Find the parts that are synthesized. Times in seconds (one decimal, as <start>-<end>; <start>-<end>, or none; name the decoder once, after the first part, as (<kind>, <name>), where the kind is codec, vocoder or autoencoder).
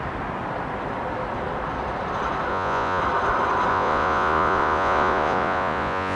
2.5-3.0 (vocoder, Vocos); 3.7-6.2